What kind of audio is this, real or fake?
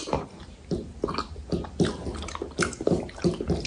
real